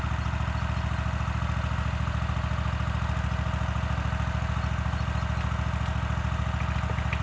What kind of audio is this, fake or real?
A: real